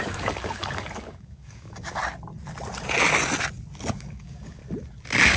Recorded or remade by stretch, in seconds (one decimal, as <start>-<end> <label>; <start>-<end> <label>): 0.0-2.0 remade; 2.0-3.9 recorded; 3.9-4.6 remade; 4.6-5.4 recorded